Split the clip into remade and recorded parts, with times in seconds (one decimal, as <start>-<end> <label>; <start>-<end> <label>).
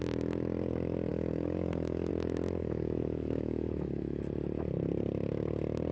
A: 0.0-1.1 recorded; 1.1-2.1 remade; 2.1-2.6 recorded; 2.6-4.2 remade; 4.2-5.9 recorded